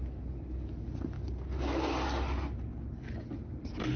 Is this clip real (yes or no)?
yes